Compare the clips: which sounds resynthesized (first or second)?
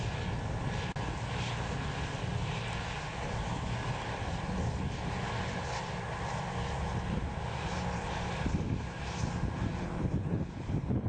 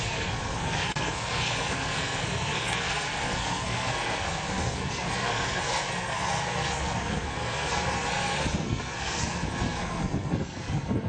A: second